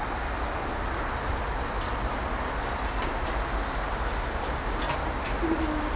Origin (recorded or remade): recorded